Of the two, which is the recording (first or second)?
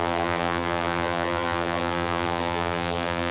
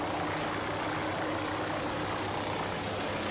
second